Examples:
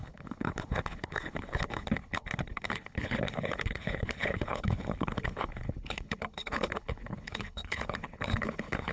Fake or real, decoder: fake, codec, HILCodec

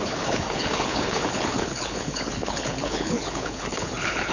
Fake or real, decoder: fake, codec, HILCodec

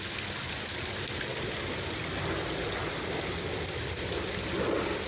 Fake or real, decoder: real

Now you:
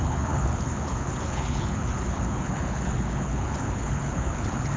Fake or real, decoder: fake, codec, HILCodec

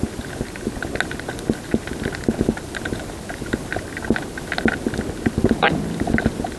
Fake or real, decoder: real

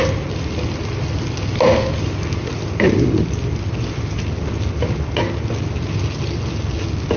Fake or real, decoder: real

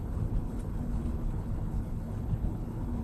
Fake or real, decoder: fake, codec, HILCodec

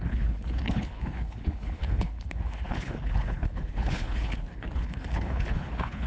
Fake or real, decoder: fake, codec, HILCodec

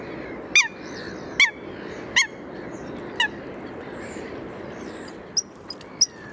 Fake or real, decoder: real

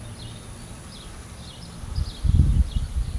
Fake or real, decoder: real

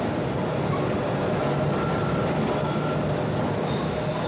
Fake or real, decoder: real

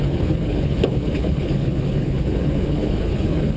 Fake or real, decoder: fake, codec, HILCodec